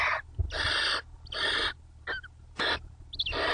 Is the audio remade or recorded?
recorded